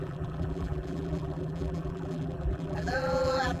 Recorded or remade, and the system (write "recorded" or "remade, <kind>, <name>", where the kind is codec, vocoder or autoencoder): remade, vocoder, BigVGAN v2